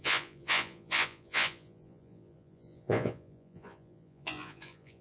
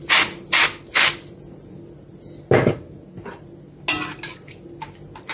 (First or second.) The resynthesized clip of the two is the first